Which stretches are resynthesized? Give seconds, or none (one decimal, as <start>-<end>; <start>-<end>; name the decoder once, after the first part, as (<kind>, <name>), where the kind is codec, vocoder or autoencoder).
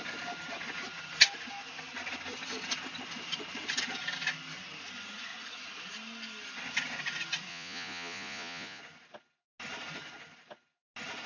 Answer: 7.5-8.8 (vocoder, Vocos)